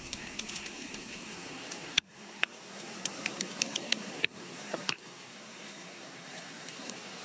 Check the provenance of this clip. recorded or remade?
remade